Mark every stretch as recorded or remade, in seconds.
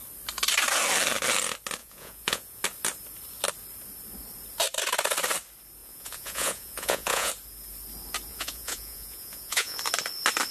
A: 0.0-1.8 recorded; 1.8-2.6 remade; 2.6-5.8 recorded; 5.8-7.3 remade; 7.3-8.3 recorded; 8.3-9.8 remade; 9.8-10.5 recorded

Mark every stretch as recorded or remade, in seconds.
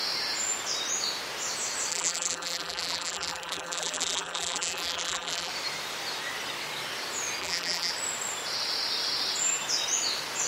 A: 0.0-1.9 recorded; 1.9-5.5 remade; 5.5-7.4 recorded; 7.4-7.9 remade; 7.9-10.5 recorded